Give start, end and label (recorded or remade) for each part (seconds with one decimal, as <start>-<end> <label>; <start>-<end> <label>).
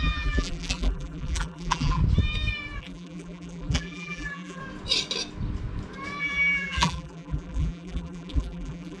0.0-2.0 remade; 2.0-2.8 recorded; 2.8-4.6 remade; 4.6-6.2 recorded; 6.2-9.0 remade